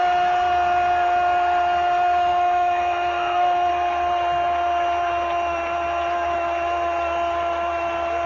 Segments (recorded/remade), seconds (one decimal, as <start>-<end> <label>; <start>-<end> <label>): 0.0-2.3 recorded; 2.3-3.7 remade; 3.7-8.3 recorded